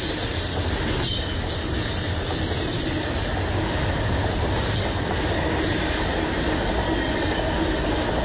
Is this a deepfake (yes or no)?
no